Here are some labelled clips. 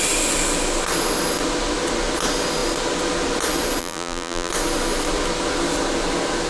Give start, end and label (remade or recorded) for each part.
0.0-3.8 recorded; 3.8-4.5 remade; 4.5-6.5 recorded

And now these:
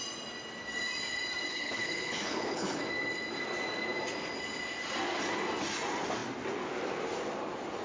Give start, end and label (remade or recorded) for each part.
0.0-1.5 recorded; 1.5-2.8 remade; 2.8-7.8 recorded

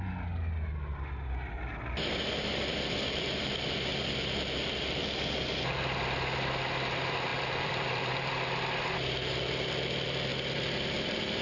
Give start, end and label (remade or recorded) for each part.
0.0-3.9 recorded; 3.9-5.5 remade; 5.5-7.3 recorded; 7.3-8.3 remade; 8.3-11.4 recorded

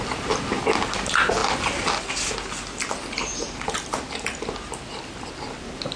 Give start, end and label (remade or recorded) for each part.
0.0-6.0 recorded

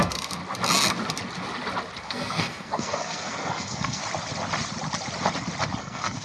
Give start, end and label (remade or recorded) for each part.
0.0-0.4 remade; 0.4-2.0 recorded; 2.0-4.0 remade; 4.0-5.8 recorded; 5.8-6.2 remade